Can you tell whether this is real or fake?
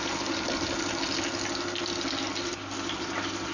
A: real